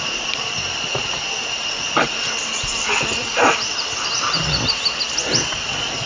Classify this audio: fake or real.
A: real